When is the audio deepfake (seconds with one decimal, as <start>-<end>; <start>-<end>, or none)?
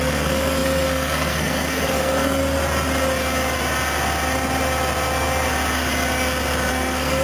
0.0-2.4; 6.7-7.2